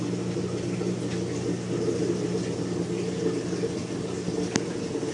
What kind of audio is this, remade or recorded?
recorded